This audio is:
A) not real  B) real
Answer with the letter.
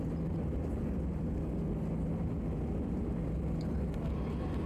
B